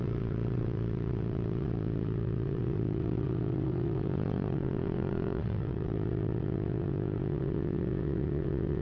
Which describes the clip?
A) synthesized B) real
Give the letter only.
A